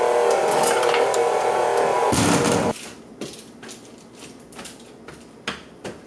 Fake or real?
real